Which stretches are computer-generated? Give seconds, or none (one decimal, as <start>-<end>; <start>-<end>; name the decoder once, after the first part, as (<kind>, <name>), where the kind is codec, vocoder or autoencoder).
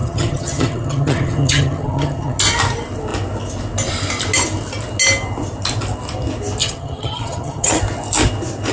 0.0-2.4 (vocoder, HiFi-GAN); 6.6-7.8